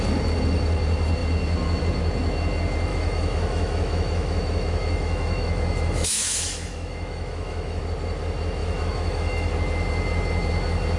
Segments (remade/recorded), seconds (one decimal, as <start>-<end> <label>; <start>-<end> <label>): 0.0-2.9 recorded; 2.9-7.8 remade; 7.8-8.6 recorded; 8.6-9.5 remade; 9.5-11.0 recorded